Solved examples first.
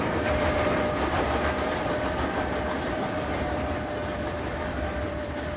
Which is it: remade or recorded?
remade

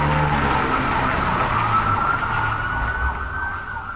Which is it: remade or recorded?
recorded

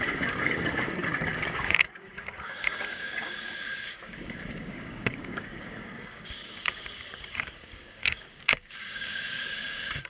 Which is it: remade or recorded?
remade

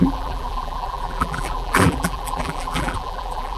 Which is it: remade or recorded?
remade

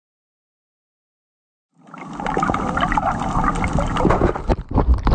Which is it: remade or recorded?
recorded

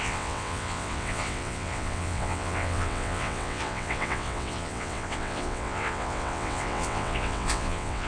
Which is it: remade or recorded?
remade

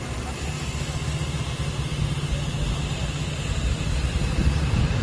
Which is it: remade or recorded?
recorded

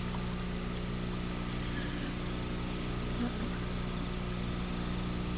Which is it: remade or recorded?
recorded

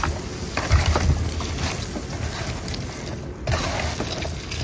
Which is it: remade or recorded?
recorded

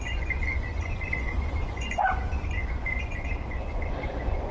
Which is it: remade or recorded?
remade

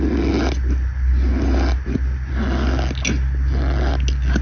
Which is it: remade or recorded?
recorded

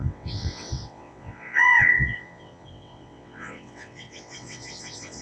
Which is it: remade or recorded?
remade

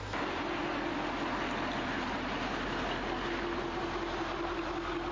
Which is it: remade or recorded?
recorded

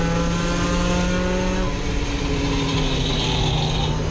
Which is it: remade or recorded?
recorded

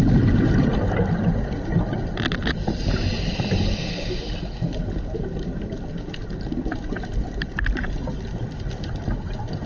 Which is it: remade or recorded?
recorded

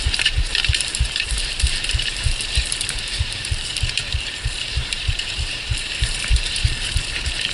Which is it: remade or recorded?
remade